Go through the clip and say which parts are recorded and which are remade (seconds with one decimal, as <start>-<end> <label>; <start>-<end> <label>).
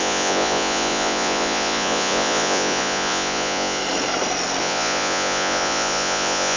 0.0-3.8 remade; 3.8-4.6 recorded; 4.6-6.6 remade